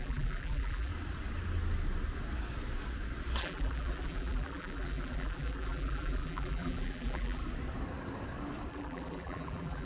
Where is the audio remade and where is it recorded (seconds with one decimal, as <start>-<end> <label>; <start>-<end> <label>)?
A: 0.0-0.9 remade; 0.9-3.4 recorded; 3.4-7.4 remade; 7.4-8.7 recorded; 8.7-9.9 remade